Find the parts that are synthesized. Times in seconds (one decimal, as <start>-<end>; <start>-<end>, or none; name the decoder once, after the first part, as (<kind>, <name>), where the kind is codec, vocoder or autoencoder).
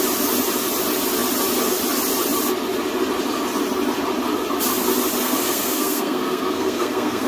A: 5.2-7.3 (codec, SNAC)